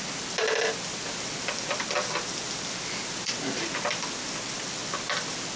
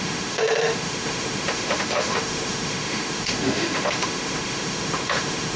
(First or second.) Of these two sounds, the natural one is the first